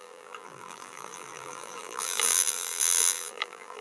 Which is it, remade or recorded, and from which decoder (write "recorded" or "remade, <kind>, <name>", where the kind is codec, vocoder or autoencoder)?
remade, vocoder, BigVGAN v2